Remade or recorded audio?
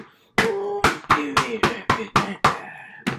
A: recorded